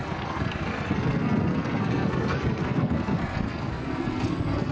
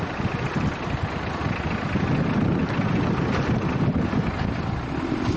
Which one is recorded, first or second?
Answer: second